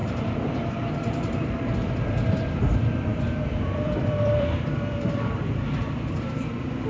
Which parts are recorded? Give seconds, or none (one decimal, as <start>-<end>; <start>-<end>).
none